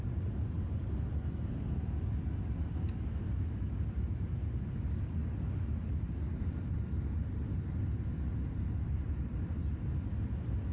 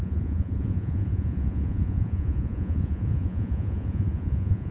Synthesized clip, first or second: second